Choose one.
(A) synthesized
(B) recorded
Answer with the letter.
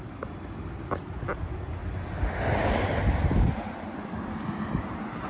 B